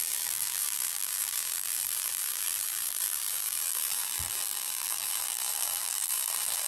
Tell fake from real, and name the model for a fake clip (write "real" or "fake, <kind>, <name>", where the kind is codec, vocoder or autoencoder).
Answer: fake, vocoder, BigVGAN v2